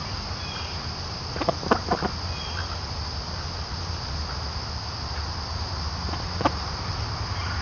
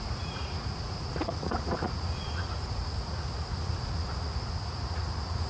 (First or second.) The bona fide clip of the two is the first